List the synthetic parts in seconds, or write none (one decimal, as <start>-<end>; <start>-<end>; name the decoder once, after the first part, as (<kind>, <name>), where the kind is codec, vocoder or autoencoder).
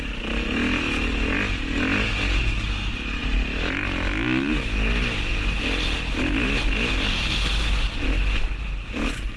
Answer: none